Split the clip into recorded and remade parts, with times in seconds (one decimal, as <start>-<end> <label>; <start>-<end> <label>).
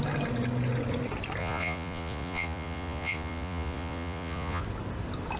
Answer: 0.0-1.4 recorded; 1.4-4.6 remade; 4.6-5.4 recorded